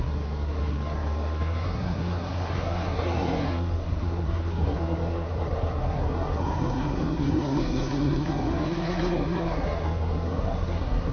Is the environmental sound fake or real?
fake